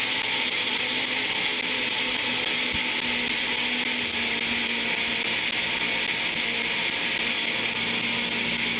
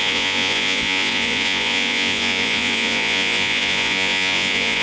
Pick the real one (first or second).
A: first